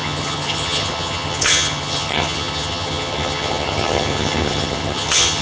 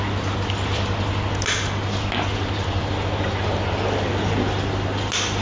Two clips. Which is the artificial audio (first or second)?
first